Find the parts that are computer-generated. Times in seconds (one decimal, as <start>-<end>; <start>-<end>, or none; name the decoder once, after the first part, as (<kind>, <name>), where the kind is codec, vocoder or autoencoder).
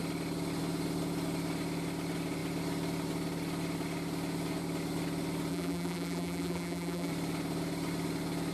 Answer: 5.5-7.1 (vocoder, BigVGAN v2)